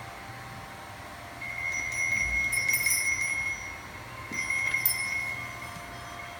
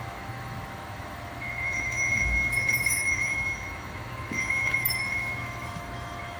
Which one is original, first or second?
first